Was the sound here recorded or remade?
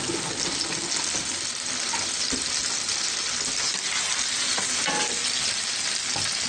recorded